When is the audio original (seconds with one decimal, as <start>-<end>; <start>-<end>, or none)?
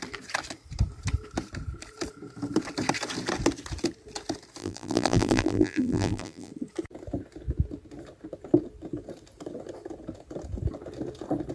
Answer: 0.0-4.6; 6.5-11.5